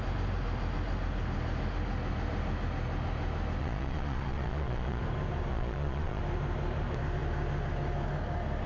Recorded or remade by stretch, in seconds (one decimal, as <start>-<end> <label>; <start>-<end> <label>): 0.0-3.6 recorded; 3.6-5.0 remade; 5.0-5.5 recorded; 5.5-6.2 remade; 6.2-8.7 recorded